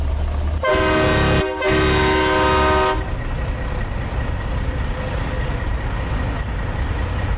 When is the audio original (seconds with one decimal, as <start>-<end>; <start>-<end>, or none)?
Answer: 0.0-7.4